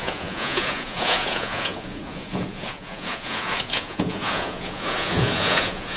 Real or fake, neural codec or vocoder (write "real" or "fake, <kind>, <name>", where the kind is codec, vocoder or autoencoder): fake, vocoder, Vocos